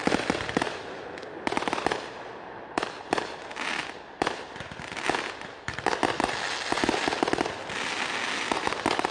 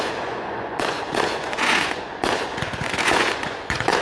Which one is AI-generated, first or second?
second